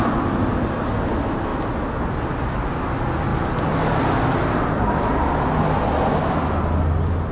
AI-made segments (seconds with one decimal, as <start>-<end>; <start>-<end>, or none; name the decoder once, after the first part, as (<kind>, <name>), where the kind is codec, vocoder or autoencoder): none